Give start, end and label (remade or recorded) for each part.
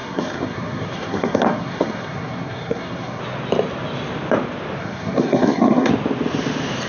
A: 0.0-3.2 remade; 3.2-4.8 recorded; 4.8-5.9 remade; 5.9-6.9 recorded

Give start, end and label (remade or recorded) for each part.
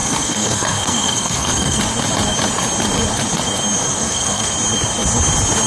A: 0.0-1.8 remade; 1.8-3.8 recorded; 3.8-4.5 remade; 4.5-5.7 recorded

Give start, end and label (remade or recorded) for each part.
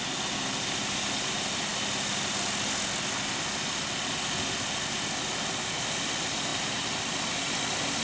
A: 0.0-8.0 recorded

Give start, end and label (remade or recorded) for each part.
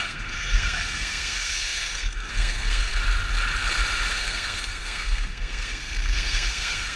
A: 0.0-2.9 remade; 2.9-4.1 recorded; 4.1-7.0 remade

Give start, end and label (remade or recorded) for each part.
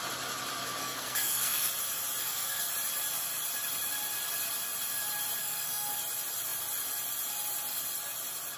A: 0.0-0.8 recorded; 0.8-1.7 remade; 1.7-2.2 recorded; 2.2-2.7 remade; 2.7-5.4 recorded; 5.4-5.9 remade; 5.9-8.6 recorded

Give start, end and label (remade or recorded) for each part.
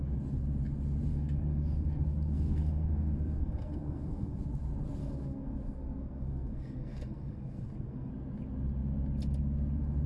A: 0.0-1.1 recorded; 1.1-4.4 remade; 4.4-5.0 recorded; 5.0-8.1 remade; 8.1-10.1 recorded